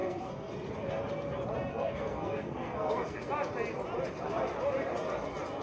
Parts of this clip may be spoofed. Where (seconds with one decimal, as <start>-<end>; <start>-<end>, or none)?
0.0-0.5; 1.7-3.3